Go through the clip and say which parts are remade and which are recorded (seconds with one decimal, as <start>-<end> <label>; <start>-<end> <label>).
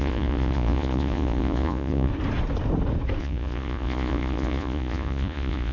0.0-2.1 remade; 2.1-3.2 recorded; 3.2-5.7 remade